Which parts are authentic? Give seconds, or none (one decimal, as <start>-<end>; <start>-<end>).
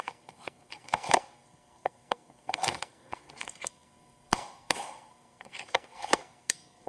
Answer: none